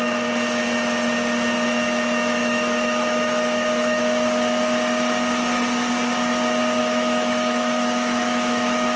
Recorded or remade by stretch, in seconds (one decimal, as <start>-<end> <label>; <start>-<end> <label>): 0.0-2.4 recorded; 2.4-4.0 remade; 4.0-6.8 recorded; 6.8-9.0 remade